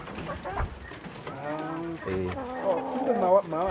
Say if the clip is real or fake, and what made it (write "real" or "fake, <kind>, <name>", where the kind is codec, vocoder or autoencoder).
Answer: real